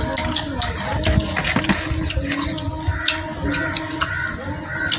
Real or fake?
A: real